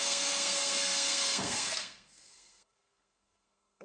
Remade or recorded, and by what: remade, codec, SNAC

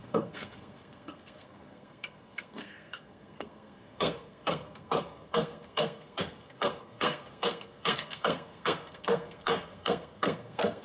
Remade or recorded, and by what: remade, codec, SNAC